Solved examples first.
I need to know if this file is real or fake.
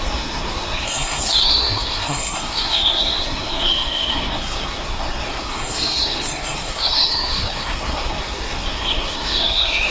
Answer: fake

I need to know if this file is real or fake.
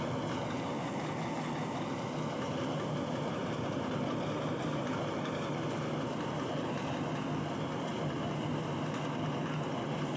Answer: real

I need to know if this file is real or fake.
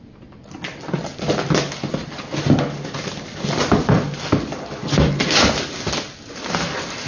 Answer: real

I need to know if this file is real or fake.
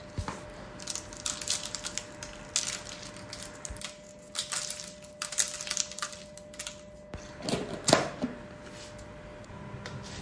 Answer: real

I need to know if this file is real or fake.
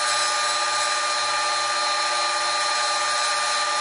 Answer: real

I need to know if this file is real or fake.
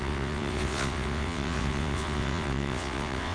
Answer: fake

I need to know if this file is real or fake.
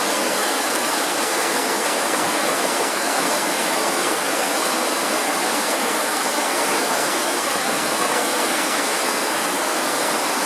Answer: fake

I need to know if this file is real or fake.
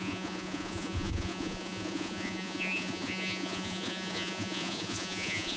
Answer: fake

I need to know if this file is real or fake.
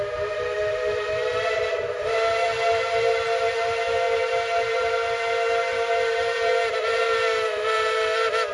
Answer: fake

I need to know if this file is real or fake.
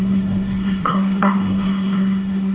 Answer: fake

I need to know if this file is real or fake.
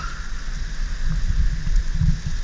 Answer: real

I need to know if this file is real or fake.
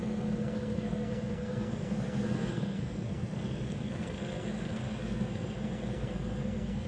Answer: fake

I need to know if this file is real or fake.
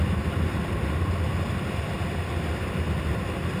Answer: fake